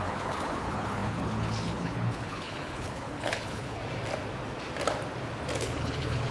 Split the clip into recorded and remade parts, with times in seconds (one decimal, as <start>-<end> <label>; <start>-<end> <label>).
0.0-3.8 remade; 3.8-5.6 recorded; 5.6-6.3 remade